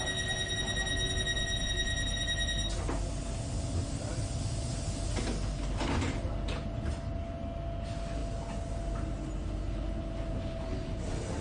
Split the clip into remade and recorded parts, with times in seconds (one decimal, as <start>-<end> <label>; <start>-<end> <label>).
0.0-8.2 recorded; 8.2-8.7 remade; 8.7-11.4 recorded